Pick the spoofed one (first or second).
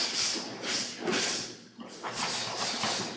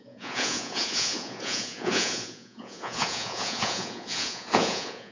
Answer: second